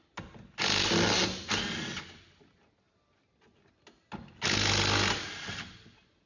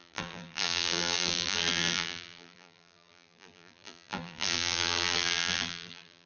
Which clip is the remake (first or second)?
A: second